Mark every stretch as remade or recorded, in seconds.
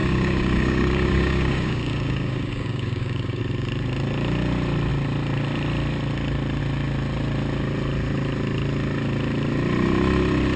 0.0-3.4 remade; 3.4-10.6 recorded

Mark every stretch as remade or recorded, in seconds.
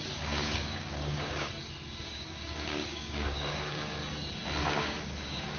0.0-1.5 remade; 1.5-2.0 recorded; 2.0-4.0 remade; 4.0-4.6 recorded; 4.6-5.6 remade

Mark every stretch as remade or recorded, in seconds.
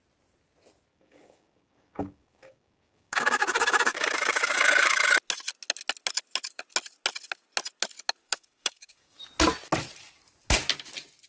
0.0-0.9 recorded; 0.9-5.0 remade; 5.0-8.2 recorded; 8.2-9.2 remade; 9.2-11.3 recorded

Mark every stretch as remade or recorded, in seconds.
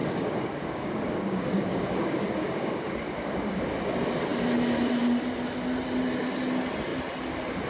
0.0-3.7 remade; 3.7-7.7 recorded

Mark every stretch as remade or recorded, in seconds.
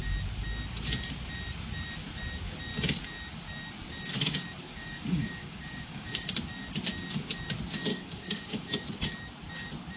0.0-4.7 recorded; 4.7-6.3 remade; 6.3-7.9 recorded; 7.9-8.7 remade; 8.7-10.0 recorded